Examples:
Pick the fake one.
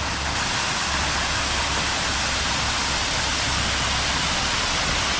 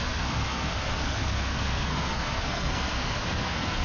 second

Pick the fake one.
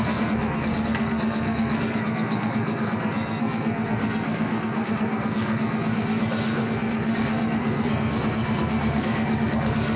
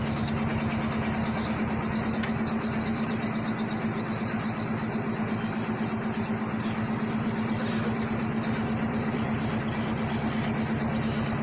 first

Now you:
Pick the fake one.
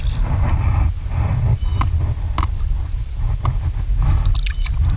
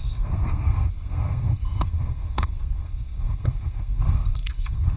second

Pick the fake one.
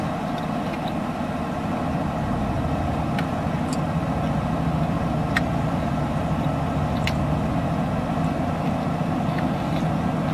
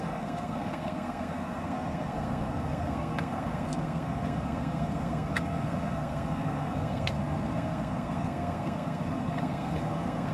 second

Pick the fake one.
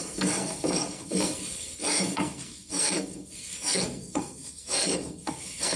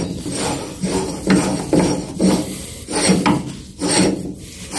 first